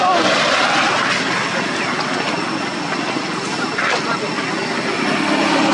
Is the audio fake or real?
real